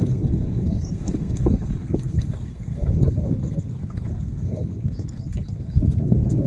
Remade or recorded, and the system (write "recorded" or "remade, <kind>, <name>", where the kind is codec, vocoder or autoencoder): remade, codec, SNAC